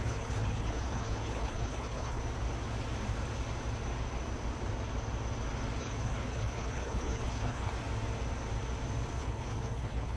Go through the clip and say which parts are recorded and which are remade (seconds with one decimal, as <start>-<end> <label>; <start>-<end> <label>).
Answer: 0.0-2.2 remade; 2.2-5.8 recorded; 5.8-7.7 remade; 7.7-9.2 recorded; 9.2-10.2 remade

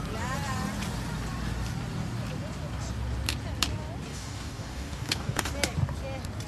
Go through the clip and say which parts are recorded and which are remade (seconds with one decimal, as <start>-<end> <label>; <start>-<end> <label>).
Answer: 0.0-4.1 recorded; 4.1-5.5 remade; 5.5-6.5 recorded

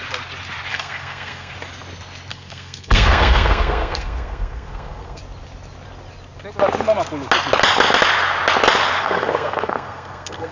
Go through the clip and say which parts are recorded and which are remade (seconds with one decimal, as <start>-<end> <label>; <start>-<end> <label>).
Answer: 0.0-0.7 recorded; 0.7-1.5 remade; 1.5-2.3 recorded; 2.3-5.2 remade; 5.2-9.0 recorded; 9.0-10.5 remade

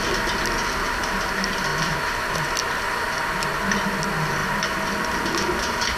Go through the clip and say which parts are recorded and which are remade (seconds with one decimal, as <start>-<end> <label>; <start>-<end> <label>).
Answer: 0.0-6.0 recorded

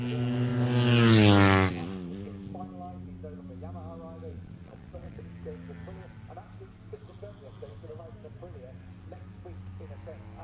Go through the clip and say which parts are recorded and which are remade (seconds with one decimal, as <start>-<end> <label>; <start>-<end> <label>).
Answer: 0.0-4.3 recorded; 4.3-5.2 remade; 5.2-10.4 recorded

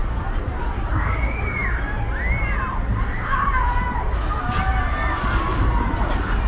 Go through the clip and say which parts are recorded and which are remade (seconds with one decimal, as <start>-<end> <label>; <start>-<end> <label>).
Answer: 0.0-0.6 remade; 0.6-2.9 recorded; 2.9-4.4 remade; 4.4-5.5 recorded; 5.5-6.1 remade; 6.1-6.5 recorded

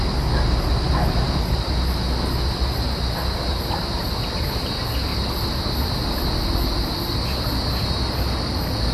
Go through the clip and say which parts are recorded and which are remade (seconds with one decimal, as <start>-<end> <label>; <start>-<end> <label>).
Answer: 0.0-3.5 recorded; 3.5-4.1 remade; 4.1-8.9 recorded